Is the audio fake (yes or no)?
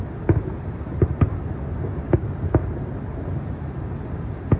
no